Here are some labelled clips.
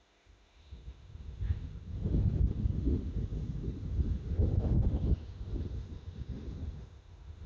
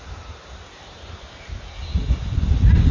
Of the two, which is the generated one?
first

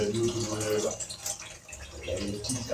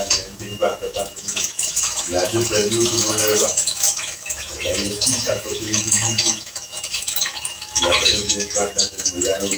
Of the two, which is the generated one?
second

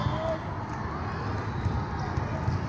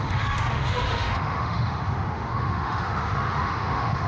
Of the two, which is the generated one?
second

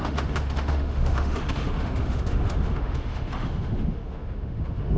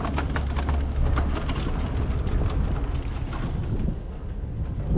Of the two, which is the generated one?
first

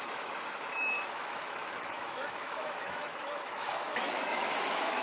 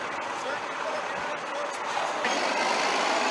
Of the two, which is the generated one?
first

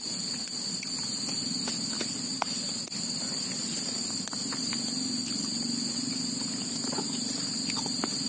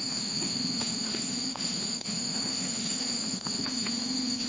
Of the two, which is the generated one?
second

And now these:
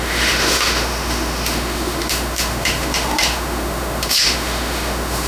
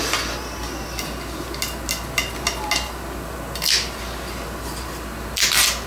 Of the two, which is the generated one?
first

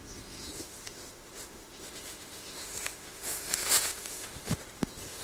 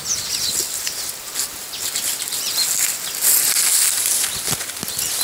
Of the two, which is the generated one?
first